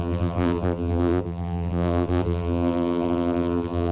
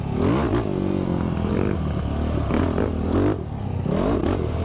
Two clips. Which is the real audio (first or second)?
second